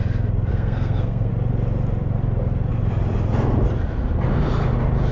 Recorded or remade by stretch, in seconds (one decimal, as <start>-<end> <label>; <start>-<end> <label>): 0.0-0.5 recorded; 0.5-1.3 remade; 1.3-5.1 recorded